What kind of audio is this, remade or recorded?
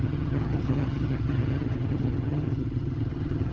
remade